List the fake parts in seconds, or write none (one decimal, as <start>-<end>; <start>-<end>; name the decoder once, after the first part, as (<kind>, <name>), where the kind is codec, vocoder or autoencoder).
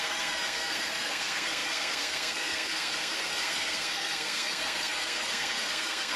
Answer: 0.0-6.2 (codec, SNAC)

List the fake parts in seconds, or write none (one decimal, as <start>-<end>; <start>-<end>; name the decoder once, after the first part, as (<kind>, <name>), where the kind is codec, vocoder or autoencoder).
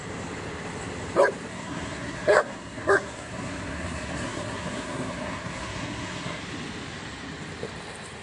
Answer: 1.5-6.4 (codec, SNAC)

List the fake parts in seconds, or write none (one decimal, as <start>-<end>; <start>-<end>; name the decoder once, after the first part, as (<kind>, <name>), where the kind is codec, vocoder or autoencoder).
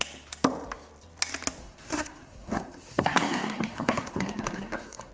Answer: 1.6-5.1 (codec, SNAC)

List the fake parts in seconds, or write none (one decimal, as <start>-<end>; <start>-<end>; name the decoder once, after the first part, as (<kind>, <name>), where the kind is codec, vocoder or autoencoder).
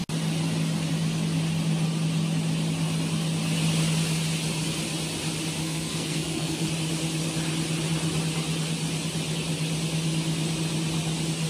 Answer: 5.6-6.7 (codec, SNAC)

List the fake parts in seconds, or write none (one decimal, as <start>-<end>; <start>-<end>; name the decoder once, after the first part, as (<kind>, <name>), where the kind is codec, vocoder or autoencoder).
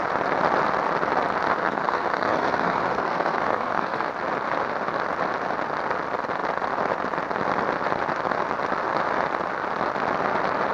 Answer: 1.6-4.1 (codec, SNAC)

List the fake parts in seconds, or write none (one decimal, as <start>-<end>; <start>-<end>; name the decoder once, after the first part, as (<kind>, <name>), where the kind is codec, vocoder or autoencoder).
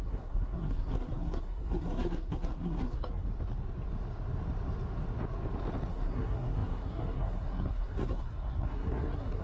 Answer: 0.0-3.3 (codec, SNAC); 5.9-9.4